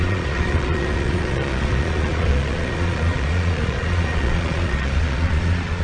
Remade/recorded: remade